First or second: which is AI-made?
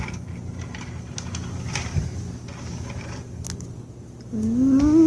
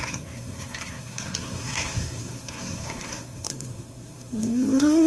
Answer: second